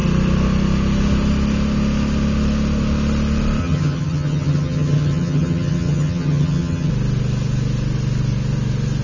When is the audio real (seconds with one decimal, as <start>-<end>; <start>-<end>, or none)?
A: 0.0-3.6; 6.9-9.0